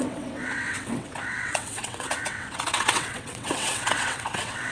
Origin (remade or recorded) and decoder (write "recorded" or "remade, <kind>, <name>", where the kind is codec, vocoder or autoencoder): remade, vocoder, WaveNeXt